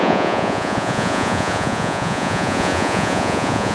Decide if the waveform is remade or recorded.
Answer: remade